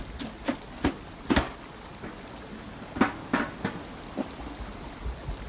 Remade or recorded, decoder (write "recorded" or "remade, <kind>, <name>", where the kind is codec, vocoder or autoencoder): recorded